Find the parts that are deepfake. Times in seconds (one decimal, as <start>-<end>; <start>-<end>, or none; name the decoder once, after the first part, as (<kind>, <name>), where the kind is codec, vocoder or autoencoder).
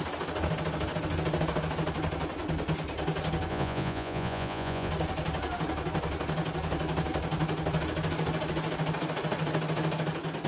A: 3.5-4.9 (vocoder, Vocos)